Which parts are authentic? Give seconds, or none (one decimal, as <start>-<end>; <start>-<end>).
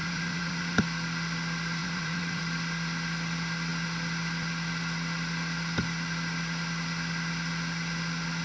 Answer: 0.8-1.8; 2.4-8.4